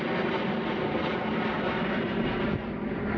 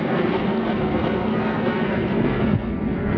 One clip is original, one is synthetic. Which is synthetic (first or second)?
second